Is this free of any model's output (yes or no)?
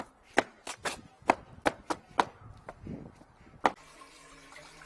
yes